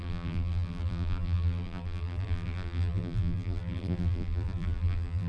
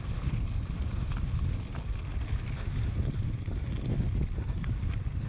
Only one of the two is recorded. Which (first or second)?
second